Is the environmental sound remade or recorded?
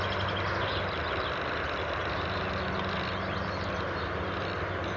recorded